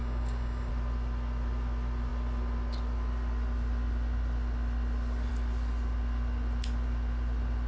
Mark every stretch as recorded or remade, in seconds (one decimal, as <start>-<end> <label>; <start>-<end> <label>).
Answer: 0.0-0.7 remade; 0.7-7.7 recorded